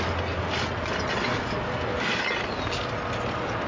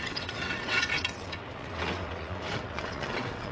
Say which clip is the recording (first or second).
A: first